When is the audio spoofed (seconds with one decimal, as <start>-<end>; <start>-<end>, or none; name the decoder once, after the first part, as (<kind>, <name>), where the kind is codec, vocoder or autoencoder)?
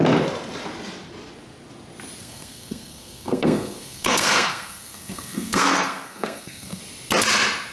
2.2-6.8 (codec, SNAC)